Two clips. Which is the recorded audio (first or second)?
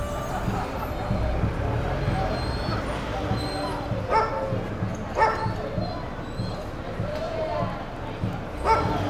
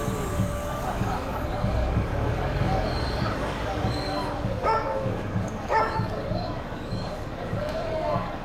first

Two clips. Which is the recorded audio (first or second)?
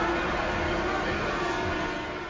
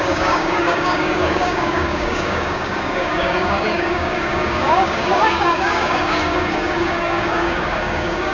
first